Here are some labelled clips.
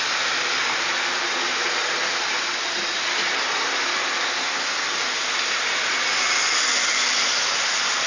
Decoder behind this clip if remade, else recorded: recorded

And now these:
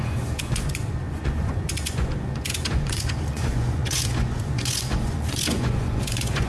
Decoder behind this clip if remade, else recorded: remade, vocoder, Vocos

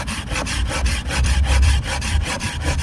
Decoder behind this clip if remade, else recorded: remade, vocoder, BigVGAN v2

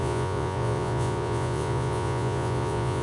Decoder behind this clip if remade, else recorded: remade, vocoder, Vocos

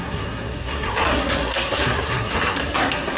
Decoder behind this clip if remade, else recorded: remade, codec, SNAC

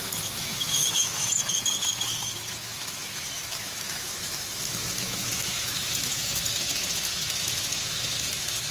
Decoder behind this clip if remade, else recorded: remade, autoencoder, DAC-VAE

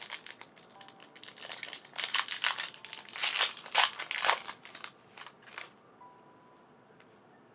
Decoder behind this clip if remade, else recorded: recorded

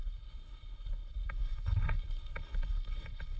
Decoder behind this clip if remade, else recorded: remade, codec, HILCodec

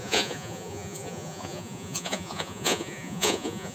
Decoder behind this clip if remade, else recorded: remade, vocoder, Vocos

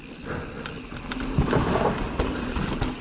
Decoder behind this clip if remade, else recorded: recorded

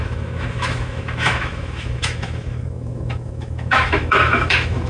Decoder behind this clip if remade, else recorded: remade, autoencoder, DAC-VAE